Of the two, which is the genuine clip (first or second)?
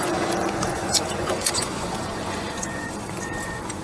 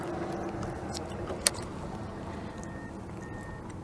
second